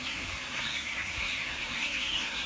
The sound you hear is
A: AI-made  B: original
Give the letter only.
A